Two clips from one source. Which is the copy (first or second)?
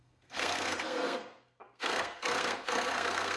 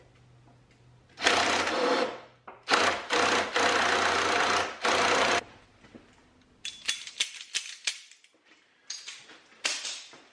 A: first